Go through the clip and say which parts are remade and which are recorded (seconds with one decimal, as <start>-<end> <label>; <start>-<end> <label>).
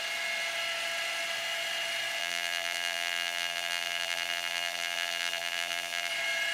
0.0-2.2 recorded; 2.2-6.1 remade; 6.1-6.5 recorded